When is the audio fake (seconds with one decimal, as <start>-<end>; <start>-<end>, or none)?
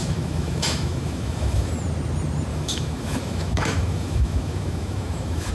0.0-1.7; 2.5-5.5